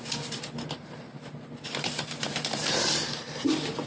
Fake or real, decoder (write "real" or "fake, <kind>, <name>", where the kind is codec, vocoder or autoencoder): fake, vocoder, BigVGAN v2